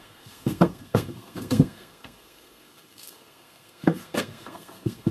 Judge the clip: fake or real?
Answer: fake